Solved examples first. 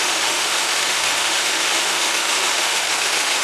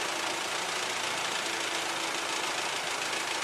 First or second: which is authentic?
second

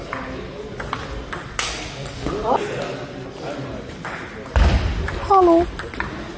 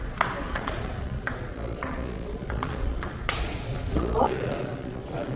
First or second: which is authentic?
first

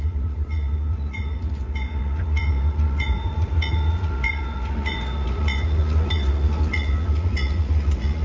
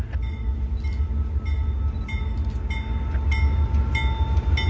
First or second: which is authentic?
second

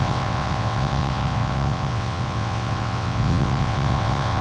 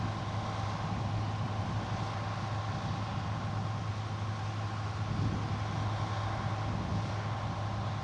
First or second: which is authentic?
second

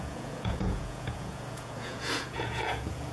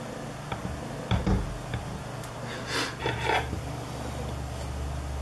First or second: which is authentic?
second